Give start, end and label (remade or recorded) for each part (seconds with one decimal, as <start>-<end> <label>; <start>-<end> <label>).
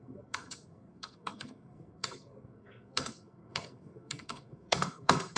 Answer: 0.0-5.4 remade